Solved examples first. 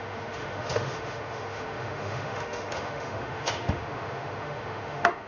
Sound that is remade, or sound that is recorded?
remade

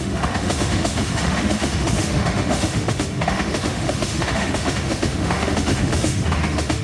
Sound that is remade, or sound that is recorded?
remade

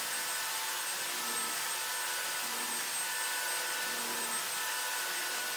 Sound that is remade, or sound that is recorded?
recorded